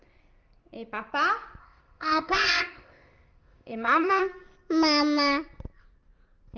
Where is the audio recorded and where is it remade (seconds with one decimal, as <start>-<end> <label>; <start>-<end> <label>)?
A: 0.0-1.6 recorded; 1.6-4.2 remade; 4.2-6.6 recorded